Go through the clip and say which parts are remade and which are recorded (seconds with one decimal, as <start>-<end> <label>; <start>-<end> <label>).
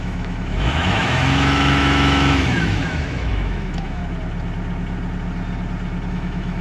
0.0-4.0 remade; 4.0-6.1 recorded; 6.1-6.6 remade